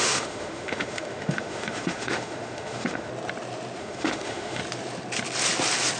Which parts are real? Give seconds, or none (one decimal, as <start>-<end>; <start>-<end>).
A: 3.1-3.8; 4.6-6.0